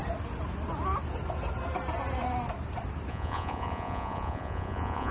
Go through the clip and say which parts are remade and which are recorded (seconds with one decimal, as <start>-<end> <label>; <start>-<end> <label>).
0.0-3.1 recorded; 3.1-5.1 remade

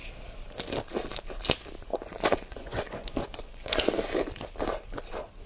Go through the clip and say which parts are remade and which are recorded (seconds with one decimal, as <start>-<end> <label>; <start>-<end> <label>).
0.0-1.9 recorded; 1.9-3.8 remade; 3.8-5.5 recorded

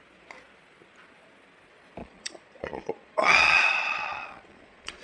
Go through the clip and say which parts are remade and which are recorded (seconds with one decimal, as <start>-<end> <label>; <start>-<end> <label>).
0.0-2.0 recorded; 2.0-5.0 remade

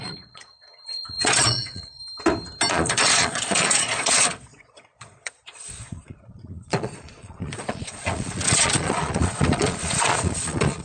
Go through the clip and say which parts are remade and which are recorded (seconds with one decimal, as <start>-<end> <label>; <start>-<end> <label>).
0.0-2.0 remade; 2.0-2.7 recorded; 2.7-10.8 remade

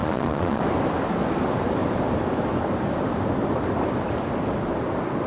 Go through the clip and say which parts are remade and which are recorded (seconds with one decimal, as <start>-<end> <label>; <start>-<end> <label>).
0.0-0.6 remade; 0.6-5.3 recorded

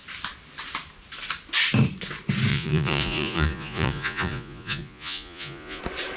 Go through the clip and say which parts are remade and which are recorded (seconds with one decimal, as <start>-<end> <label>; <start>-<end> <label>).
0.0-2.5 recorded; 2.5-5.8 remade; 5.8-6.2 recorded

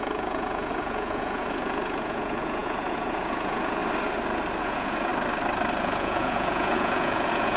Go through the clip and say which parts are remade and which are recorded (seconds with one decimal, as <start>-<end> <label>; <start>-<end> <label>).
0.0-3.8 remade; 3.8-4.6 recorded; 4.6-5.1 remade; 5.1-5.8 recorded; 5.8-7.6 remade

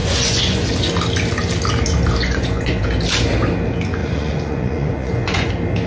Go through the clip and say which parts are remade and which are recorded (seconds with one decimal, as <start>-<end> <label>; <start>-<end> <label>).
0.0-0.7 remade; 0.7-2.2 recorded; 2.2-2.8 remade; 2.8-4.0 recorded; 4.0-5.5 remade; 5.5-5.9 recorded